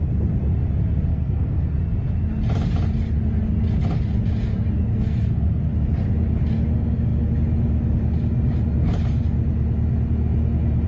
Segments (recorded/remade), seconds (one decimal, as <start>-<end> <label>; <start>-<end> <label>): 0.0-1.1 recorded; 1.1-1.8 remade; 1.8-4.9 recorded; 4.9-5.6 remade; 5.6-10.9 recorded